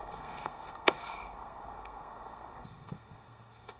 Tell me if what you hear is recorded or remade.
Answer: remade